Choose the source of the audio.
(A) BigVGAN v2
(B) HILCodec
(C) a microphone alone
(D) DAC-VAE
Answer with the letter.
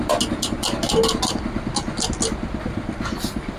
C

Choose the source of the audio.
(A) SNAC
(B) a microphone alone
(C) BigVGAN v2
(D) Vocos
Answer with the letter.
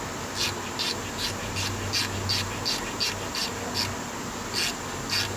B